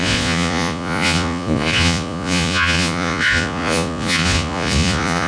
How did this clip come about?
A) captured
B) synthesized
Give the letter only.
B